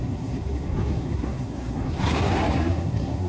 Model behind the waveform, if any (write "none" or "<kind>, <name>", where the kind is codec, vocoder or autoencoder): codec, SNAC